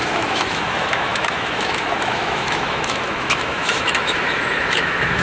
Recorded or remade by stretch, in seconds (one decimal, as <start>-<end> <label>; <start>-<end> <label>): 0.0-5.2 remade